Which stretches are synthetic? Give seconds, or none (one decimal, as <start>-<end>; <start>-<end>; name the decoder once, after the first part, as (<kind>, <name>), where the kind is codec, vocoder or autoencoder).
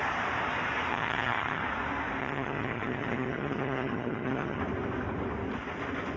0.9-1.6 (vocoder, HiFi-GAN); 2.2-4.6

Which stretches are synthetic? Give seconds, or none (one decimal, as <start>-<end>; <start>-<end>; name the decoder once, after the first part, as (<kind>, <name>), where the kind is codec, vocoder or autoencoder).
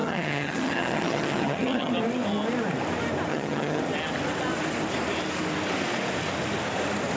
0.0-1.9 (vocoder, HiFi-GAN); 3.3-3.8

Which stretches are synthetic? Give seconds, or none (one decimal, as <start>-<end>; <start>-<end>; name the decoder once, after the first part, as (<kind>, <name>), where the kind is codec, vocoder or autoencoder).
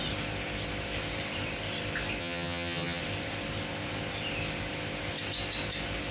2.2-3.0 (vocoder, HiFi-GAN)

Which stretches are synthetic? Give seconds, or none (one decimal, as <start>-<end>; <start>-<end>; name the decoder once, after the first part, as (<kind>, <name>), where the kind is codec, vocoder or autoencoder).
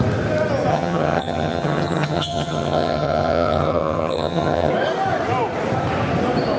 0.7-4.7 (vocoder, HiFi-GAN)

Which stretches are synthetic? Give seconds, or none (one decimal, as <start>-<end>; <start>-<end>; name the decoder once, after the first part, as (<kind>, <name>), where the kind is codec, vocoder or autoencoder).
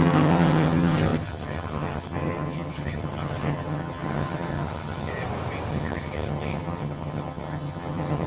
0.0-5.1 (vocoder, HiFi-GAN); 5.7-8.3